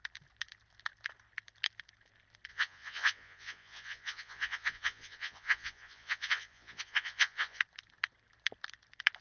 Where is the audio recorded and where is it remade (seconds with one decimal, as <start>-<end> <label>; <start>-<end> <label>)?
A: 0.0-2.5 recorded; 2.5-7.6 remade; 7.6-9.2 recorded